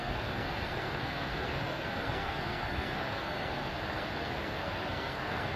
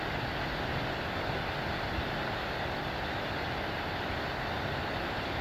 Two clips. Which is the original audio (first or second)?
second